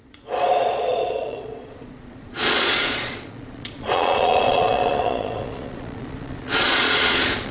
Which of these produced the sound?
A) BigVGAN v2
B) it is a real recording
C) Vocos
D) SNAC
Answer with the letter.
C